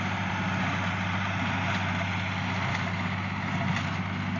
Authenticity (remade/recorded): recorded